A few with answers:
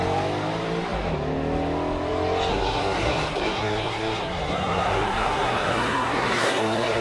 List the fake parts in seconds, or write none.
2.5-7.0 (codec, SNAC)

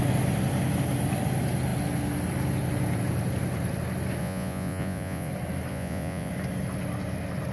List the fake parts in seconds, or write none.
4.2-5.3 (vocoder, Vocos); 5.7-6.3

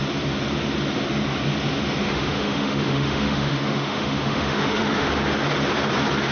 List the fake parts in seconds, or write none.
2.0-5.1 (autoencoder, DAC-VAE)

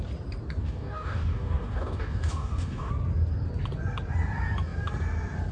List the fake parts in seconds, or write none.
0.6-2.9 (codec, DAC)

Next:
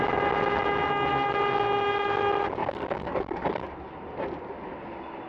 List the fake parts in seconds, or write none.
2.6-3.9 (codec, DAC)

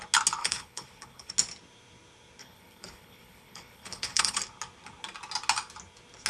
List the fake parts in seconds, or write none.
0.4-1.3 (codec, HILCodec); 2.4-4.4

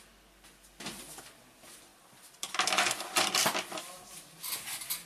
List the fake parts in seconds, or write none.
none

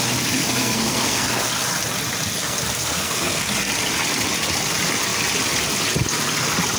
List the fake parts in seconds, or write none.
0.4-1.6 (codec, SNAC); 2.4-3.5